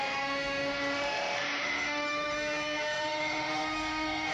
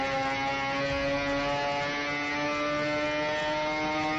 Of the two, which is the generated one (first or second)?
first